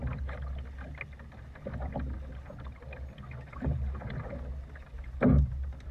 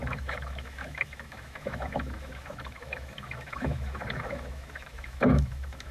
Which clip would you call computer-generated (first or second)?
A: second